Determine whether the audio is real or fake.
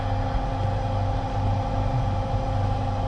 real